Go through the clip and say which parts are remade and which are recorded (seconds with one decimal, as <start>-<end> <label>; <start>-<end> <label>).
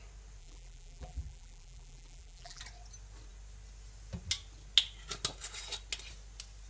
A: 0.0-0.4 recorded; 0.4-2.6 remade; 2.6-6.7 recorded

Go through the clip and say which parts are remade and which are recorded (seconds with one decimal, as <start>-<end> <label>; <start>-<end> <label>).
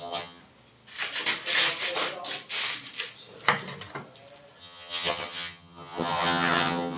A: 0.0-0.4 remade; 0.4-4.6 recorded; 4.6-7.0 remade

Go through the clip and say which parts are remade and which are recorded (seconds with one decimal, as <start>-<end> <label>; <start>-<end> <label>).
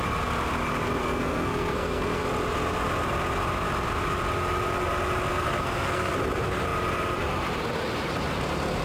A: 0.0-1.0 recorded; 1.0-2.2 remade; 2.2-5.3 recorded; 5.3-6.1 remade; 6.1-8.8 recorded